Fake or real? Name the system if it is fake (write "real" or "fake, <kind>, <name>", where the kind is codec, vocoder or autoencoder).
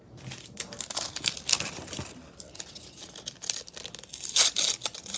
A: real